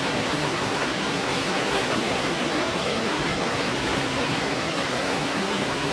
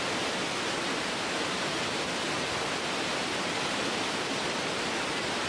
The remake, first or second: first